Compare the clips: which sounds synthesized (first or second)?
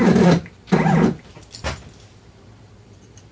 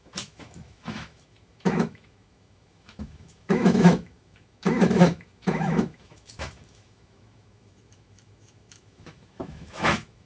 second